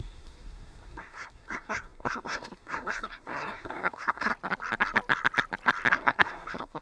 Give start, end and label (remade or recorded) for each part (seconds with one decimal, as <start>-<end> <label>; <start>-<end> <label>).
0.0-4.3 remade; 4.3-5.9 recorded; 5.9-6.8 remade